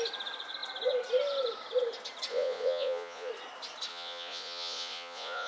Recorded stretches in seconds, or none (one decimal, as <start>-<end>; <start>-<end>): 0.0-2.3; 3.3-3.9